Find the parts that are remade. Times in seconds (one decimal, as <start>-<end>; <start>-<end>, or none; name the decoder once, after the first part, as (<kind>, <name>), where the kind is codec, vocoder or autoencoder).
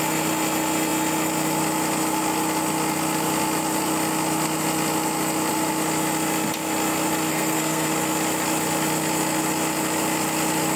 7.3-7.9 (codec, SNAC)